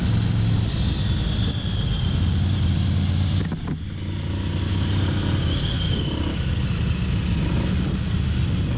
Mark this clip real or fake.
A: real